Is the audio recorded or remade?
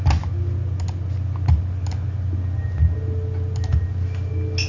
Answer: recorded